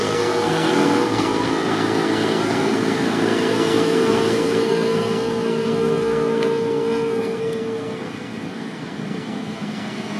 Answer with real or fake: fake